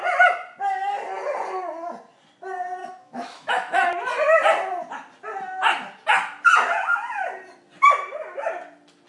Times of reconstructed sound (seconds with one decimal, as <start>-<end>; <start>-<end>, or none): 2.8-3.9